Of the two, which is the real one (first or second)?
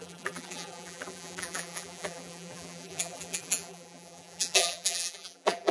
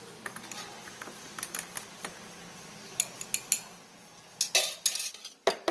second